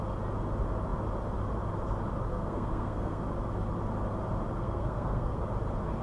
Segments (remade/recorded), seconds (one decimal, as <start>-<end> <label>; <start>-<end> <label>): 0.0-2.3 recorded; 2.3-3.2 remade; 3.2-4.6 recorded; 4.6-5.4 remade; 5.4-6.0 recorded